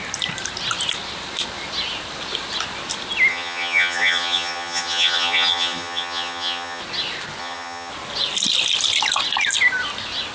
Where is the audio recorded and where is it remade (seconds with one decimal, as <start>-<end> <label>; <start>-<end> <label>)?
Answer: 0.0-3.3 recorded; 3.3-6.8 remade; 6.8-7.4 recorded; 7.4-7.9 remade; 7.9-10.3 recorded